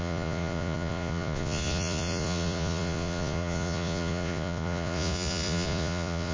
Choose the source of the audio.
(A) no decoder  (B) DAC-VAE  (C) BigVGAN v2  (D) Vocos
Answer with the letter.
D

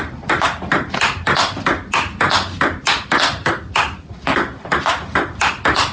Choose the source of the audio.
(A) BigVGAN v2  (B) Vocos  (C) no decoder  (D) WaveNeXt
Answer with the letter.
C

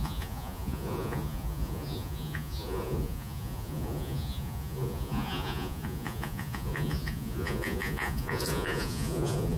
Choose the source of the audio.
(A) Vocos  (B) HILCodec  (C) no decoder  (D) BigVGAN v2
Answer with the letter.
A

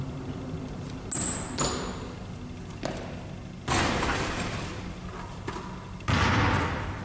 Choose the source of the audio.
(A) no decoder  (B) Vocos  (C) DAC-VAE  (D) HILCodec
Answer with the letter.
A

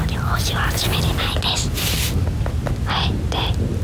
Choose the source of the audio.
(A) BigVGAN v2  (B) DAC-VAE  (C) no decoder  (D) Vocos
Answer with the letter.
C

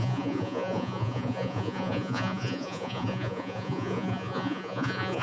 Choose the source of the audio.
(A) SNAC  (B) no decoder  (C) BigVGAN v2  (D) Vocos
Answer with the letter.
D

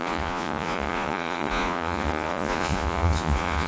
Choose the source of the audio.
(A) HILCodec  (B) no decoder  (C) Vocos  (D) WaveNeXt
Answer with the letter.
C